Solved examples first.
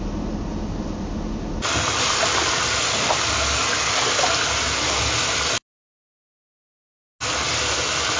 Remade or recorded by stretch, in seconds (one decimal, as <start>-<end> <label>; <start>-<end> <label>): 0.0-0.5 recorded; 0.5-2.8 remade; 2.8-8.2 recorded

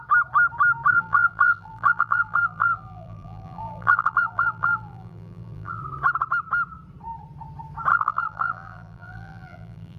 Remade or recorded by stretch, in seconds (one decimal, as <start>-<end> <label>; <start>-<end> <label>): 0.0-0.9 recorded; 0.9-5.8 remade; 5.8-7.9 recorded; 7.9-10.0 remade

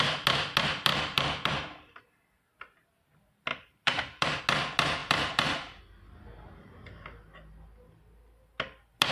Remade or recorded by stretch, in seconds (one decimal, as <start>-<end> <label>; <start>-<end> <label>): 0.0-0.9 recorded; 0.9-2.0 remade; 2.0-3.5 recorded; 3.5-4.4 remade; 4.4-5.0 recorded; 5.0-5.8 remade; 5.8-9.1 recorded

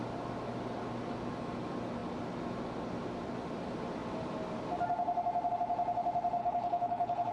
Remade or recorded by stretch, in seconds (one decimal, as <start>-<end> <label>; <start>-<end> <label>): 0.0-6.4 recorded; 6.4-7.3 remade

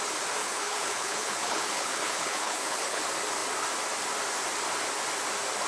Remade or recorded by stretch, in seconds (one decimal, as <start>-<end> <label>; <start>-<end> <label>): 0.0-0.4 recorded; 0.4-3.0 remade; 3.0-5.7 recorded